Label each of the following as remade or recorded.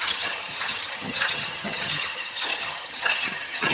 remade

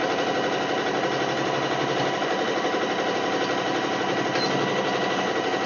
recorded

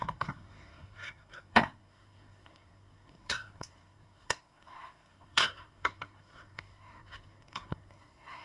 remade